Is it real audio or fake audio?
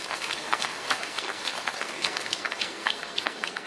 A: fake